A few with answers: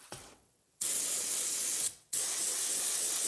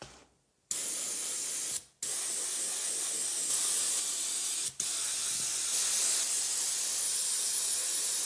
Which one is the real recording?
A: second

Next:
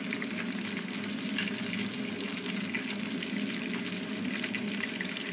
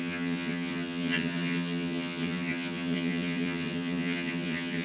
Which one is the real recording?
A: first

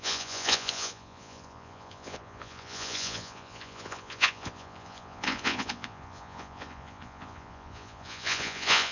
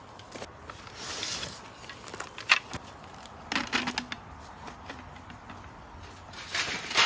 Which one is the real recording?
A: second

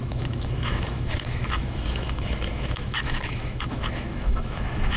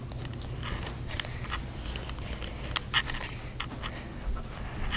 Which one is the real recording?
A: second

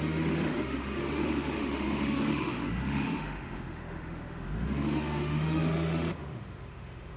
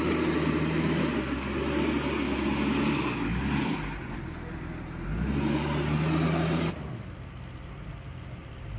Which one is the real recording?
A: second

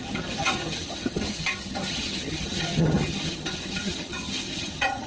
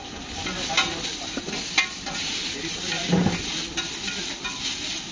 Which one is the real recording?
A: second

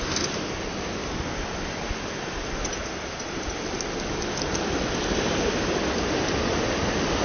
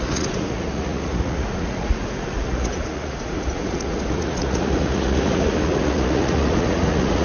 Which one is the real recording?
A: first